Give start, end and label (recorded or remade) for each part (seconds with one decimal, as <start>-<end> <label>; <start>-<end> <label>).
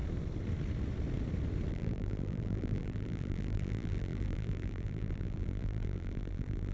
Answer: 0.0-1.7 recorded; 1.7-6.7 remade